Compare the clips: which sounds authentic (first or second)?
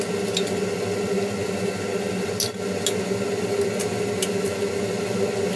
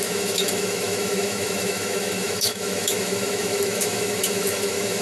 first